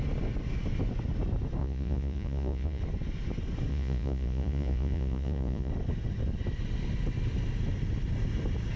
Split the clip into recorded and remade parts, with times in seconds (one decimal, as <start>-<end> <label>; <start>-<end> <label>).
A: 0.0-1.6 recorded; 1.6-2.8 remade; 2.8-3.7 recorded; 3.7-5.7 remade; 5.7-8.8 recorded